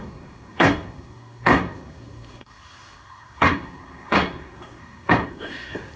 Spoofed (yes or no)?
yes